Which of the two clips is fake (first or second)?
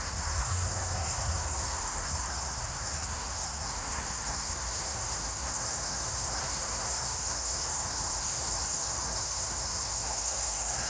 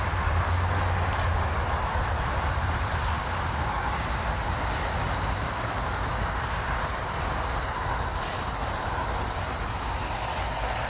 first